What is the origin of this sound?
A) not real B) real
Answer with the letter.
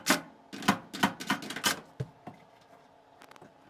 B